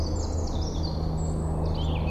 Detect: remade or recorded recorded